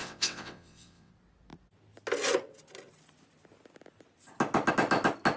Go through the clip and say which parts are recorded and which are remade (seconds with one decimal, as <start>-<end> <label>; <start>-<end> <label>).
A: 0.0-1.1 remade; 1.1-5.4 recorded